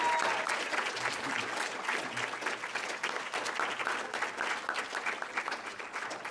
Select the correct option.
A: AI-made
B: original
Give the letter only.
B